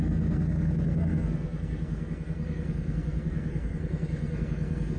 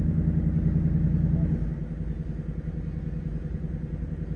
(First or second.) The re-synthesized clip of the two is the first